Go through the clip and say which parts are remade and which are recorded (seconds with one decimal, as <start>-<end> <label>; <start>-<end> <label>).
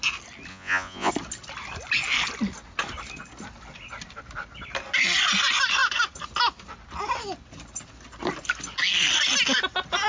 0.0-0.5 recorded; 0.5-1.1 remade; 1.1-10.1 recorded